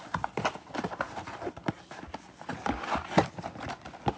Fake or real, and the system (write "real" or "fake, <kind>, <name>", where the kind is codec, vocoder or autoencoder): real